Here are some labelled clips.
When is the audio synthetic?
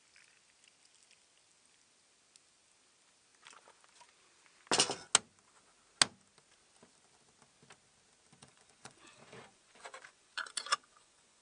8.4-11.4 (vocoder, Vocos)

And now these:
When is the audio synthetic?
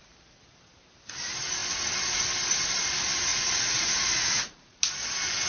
3.3-4.8 (vocoder, Vocos)